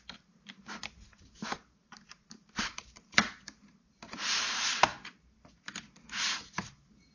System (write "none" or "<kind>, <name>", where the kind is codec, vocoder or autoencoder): vocoder, BigVGAN v2